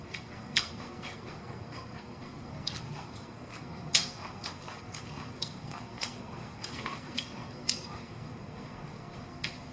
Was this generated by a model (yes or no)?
yes